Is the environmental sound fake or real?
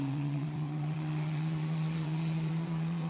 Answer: fake